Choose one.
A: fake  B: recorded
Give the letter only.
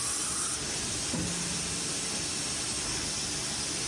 B